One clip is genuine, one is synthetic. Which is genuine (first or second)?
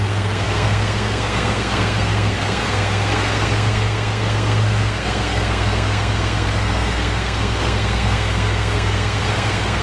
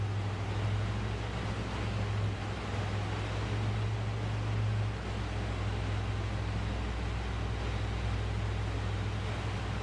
second